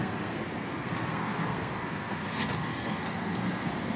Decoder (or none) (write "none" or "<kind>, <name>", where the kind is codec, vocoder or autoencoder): codec, SNAC